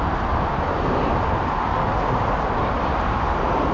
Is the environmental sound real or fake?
real